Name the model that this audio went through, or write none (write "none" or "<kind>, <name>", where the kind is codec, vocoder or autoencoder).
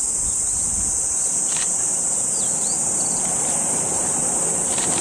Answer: none